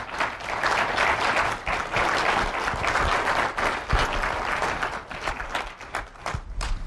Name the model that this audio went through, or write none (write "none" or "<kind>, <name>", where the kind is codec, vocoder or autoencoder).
none